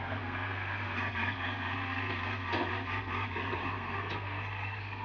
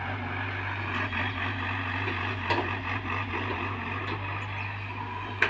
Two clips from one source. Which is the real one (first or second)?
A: second